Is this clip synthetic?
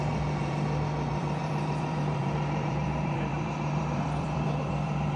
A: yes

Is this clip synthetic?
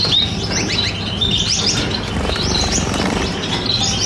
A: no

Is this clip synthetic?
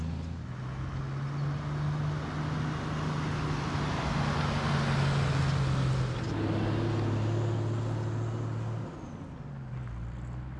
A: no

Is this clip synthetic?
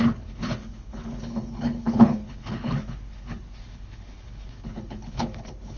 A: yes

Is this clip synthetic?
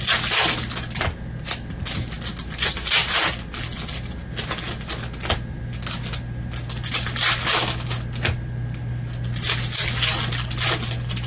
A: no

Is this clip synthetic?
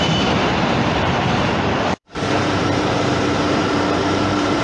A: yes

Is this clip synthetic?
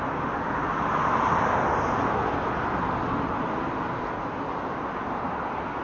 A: no